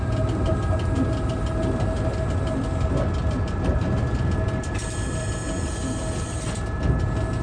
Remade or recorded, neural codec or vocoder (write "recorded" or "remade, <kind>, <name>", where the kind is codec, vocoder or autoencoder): recorded